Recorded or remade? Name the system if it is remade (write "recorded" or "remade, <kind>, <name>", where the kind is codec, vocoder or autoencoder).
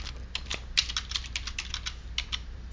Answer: recorded